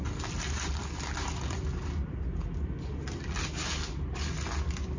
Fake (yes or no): no